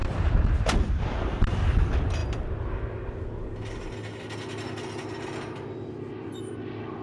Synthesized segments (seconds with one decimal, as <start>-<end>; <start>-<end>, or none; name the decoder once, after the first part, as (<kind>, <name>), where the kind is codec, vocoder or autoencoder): 0.0-0.6 (vocoder, BigVGAN v2)